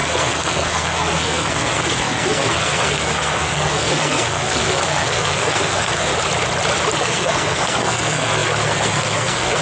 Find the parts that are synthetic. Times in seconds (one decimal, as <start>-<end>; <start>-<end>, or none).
0.0-6.1; 7.0-9.6